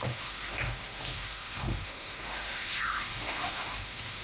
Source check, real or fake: fake